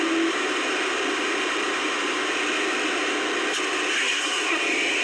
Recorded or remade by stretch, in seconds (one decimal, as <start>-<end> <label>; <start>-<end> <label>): 0.0-4.0 recorded; 4.0-4.6 remade; 4.6-5.0 recorded